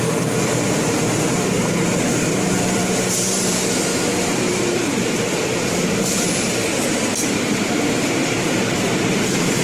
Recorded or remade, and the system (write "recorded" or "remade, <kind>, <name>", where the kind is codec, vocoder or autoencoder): remade, vocoder, BigVGAN v2